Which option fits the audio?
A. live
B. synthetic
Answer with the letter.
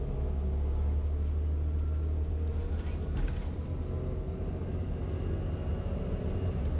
A